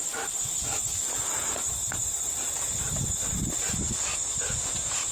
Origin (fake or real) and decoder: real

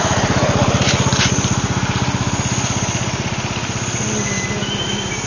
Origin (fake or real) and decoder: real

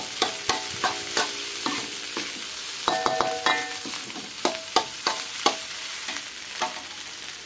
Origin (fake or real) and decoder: real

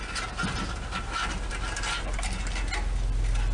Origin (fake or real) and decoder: fake, vocoder, BigVGAN v2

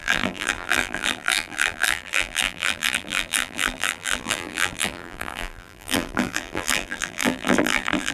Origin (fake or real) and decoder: fake, vocoder, BigVGAN v2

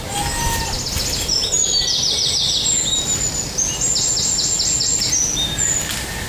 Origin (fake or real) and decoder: real